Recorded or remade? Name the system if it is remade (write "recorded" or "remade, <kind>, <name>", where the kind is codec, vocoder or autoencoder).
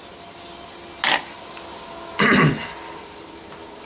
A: recorded